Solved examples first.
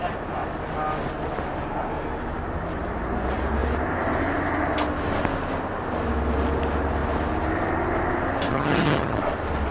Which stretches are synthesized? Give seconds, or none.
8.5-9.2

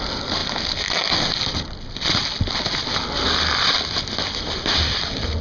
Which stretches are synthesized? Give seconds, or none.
none

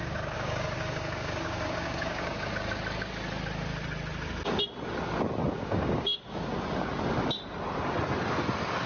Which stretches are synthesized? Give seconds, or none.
0.0-2.5; 5.5-6.5

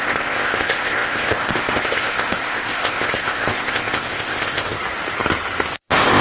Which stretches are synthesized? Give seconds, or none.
0.0-4.8; 5.7-6.2

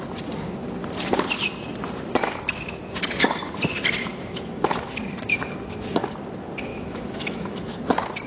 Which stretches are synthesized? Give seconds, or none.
4.0-4.7; 6.7-7.8

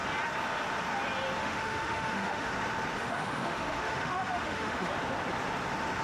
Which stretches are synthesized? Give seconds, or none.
1.4-2.5; 3.0-4.9